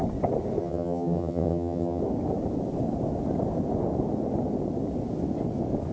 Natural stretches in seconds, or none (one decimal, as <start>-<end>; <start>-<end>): 0.0-0.6; 2.0-5.9

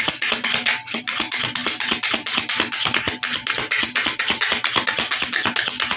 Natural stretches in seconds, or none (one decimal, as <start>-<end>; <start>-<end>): 0.0-6.0

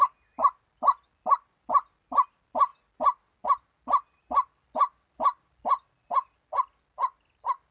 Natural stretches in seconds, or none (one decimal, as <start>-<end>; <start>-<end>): 0.0-7.7